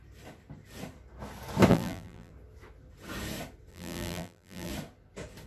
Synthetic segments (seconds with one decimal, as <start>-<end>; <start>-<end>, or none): 1.7-2.3; 3.7-4.7